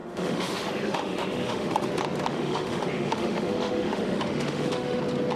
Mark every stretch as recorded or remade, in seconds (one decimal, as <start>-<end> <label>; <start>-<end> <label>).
0.0-1.9 remade; 1.9-2.3 recorded; 2.3-5.0 remade; 5.0-5.4 recorded